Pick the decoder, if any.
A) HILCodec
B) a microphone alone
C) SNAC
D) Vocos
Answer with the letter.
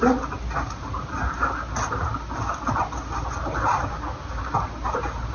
B